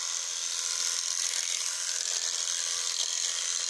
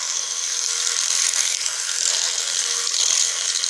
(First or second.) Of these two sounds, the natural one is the first